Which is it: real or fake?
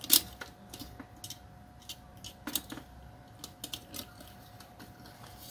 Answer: real